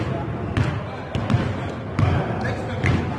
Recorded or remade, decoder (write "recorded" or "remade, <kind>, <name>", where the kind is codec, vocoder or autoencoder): recorded